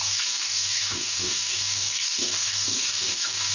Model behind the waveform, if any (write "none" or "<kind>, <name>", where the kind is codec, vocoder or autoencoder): codec, DAC